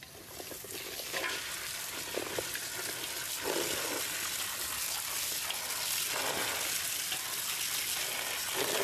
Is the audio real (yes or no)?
yes